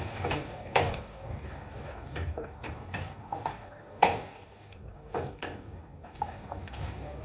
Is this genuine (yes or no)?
no